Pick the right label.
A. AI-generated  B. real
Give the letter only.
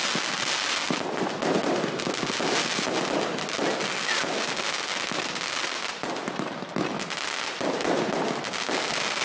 B